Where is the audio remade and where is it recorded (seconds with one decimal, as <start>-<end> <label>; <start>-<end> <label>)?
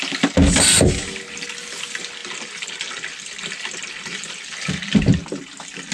0.0-5.9 recorded